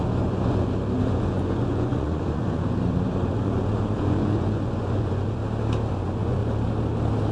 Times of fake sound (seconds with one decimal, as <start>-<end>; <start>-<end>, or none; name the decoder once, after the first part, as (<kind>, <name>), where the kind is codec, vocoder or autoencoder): 0.0-5.4 (vocoder, Vocos); 5.9-6.4